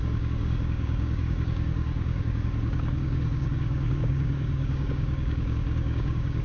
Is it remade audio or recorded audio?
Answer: remade